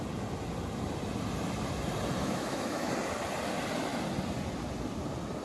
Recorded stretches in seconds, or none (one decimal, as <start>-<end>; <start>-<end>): 0.0-2.2; 2.9-5.4